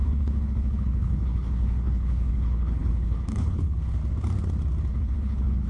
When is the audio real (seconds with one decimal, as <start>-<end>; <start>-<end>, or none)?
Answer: 4.0-4.9